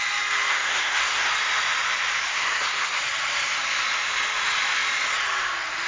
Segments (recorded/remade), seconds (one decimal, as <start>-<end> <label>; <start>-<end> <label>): 0.0-0.5 recorded; 0.5-1.3 remade; 1.3-2.2 recorded; 2.2-3.0 remade; 3.0-5.9 recorded